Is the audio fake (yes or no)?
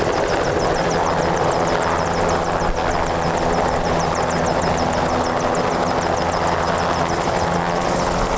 no